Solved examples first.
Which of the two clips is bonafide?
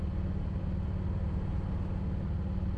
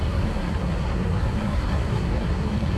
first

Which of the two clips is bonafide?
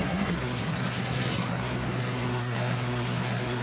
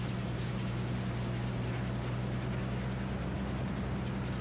second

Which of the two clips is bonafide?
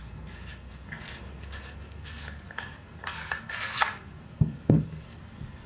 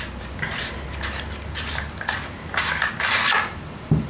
second